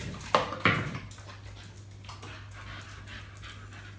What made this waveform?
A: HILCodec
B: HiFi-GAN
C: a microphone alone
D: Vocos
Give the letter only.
C